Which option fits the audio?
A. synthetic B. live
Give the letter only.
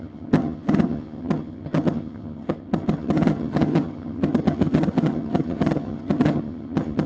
A